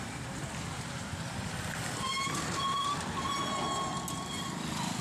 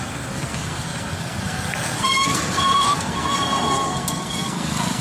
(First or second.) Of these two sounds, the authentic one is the first